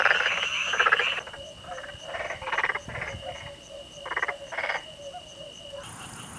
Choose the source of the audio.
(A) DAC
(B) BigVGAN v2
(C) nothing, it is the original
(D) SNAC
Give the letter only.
C